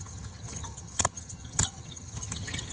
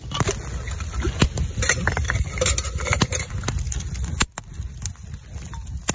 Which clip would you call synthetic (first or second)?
first